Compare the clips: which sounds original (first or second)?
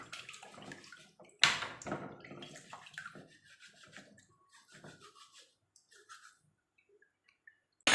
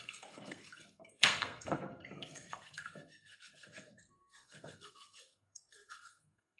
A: first